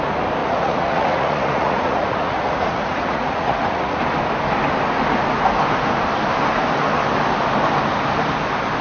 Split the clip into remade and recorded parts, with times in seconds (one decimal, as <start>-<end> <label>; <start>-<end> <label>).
0.0-0.4 recorded; 0.4-4.0 remade; 4.0-8.8 recorded